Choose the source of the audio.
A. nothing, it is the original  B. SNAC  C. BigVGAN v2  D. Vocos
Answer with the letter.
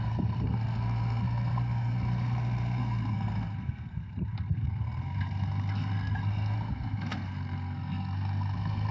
B